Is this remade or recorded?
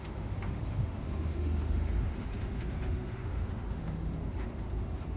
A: remade